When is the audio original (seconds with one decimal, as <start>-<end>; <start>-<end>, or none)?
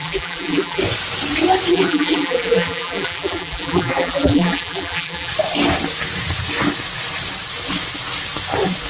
0.8-1.7; 5.3-8.9